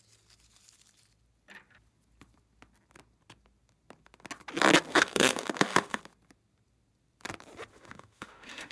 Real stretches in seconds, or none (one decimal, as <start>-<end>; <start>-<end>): 0.0-4.9; 6.0-7.7

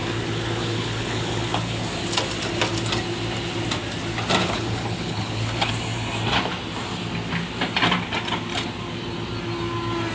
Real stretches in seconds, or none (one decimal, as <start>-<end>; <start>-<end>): 1.8-4.4; 5.7-10.1

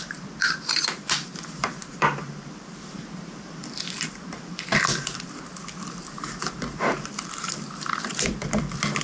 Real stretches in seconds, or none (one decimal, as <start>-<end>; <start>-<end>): none

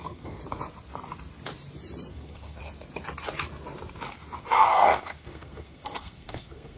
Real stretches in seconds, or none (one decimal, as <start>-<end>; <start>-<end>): 0.4-2.1; 2.6-4.4

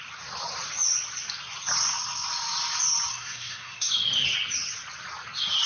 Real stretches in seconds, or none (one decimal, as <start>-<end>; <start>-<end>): 0.0-3.1; 3.9-5.7

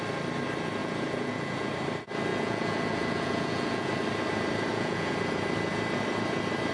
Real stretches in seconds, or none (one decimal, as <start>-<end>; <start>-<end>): 0.0-0.8; 1.7-2.3; 3.9-4.7; 5.4-6.7